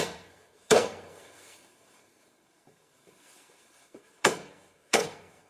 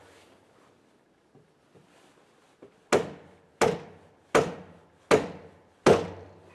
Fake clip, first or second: first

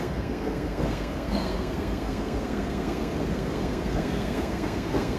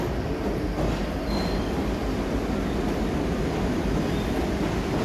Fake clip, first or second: first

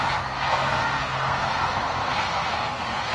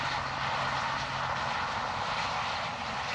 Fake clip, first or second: first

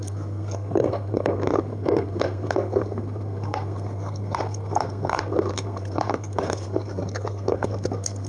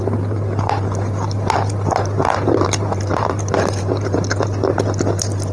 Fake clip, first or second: first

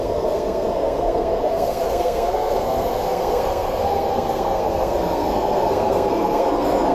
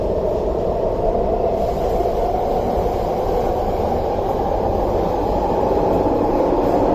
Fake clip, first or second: first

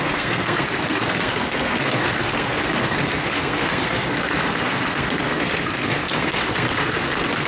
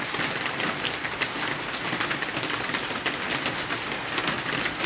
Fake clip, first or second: first